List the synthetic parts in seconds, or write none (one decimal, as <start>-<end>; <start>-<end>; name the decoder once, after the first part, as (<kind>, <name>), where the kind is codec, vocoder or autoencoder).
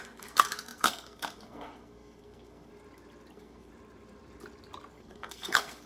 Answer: 0.0-2.7 (codec, SNAC); 3.3-3.7; 4.9-5.9